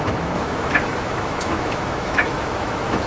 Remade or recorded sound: remade